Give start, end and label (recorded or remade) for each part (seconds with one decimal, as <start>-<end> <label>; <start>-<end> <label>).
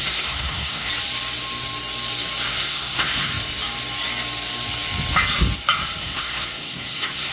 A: 0.0-0.9 remade; 0.9-2.5 recorded; 2.5-3.3 remade; 3.3-6.0 recorded; 6.0-7.3 remade